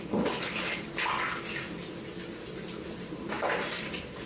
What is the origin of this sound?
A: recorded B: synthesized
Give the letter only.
A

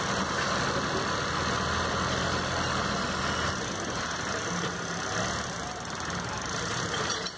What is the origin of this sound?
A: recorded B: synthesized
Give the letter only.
A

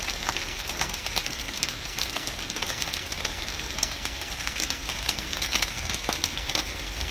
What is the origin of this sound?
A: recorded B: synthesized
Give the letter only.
B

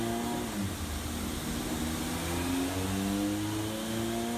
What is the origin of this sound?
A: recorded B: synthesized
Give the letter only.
A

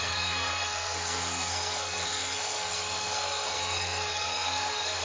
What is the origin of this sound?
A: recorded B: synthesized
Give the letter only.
B